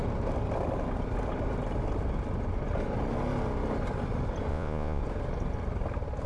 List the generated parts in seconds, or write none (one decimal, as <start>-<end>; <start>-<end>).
4.5-5.0